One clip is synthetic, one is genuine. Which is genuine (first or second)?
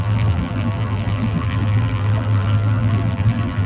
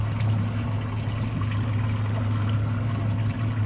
second